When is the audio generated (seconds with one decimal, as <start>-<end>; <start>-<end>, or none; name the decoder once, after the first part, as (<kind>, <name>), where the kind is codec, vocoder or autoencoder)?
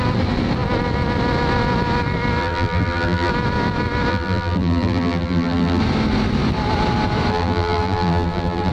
2.4-3.3 (vocoder, BigVGAN v2); 4.1-5.8; 7.3-8.7